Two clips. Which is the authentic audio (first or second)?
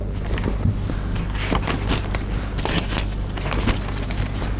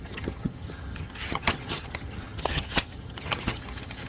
first